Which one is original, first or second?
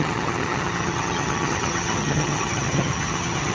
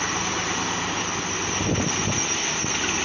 second